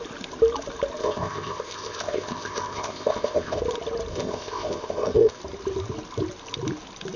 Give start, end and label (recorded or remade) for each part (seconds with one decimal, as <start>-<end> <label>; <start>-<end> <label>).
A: 0.0-1.0 recorded; 1.0-3.6 remade; 3.6-4.1 recorded; 4.1-5.4 remade; 5.4-7.2 recorded